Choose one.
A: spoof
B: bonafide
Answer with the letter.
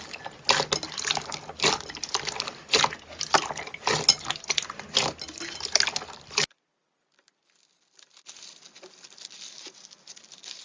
B